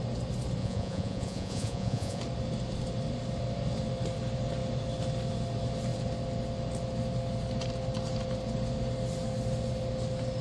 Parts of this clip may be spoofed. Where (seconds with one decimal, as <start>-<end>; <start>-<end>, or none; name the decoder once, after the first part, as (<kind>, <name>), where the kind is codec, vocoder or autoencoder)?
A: 0.6-2.2 (vocoder, Vocos)